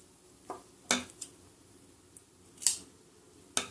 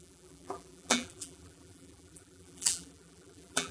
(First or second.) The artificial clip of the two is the second